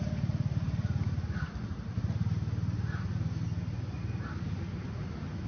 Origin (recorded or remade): recorded